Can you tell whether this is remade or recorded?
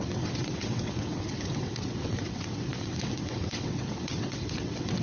remade